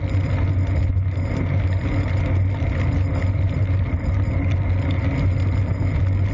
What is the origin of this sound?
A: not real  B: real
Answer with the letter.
B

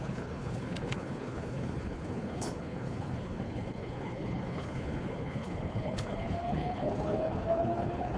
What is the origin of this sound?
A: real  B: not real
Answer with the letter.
B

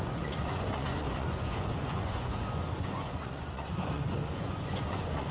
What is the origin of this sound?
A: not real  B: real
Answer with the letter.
A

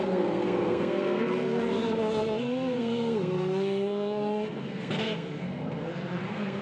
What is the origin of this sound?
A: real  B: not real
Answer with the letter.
B